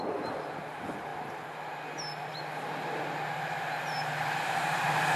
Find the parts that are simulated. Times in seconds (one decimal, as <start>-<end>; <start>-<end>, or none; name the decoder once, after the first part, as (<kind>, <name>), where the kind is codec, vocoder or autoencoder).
none